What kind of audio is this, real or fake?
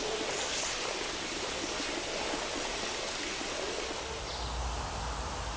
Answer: real